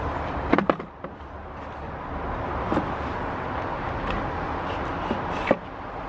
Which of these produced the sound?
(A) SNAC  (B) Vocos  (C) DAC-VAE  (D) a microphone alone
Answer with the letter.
D